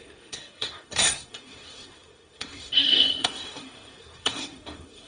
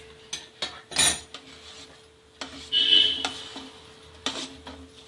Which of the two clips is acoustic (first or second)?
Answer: second